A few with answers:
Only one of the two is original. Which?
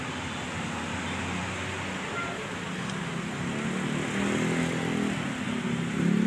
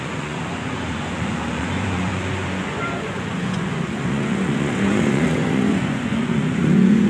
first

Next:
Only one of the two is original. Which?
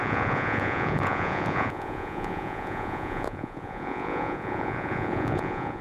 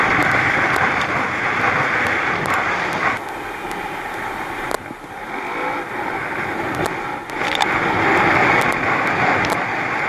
second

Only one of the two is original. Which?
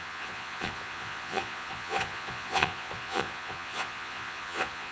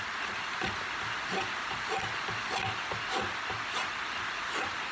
second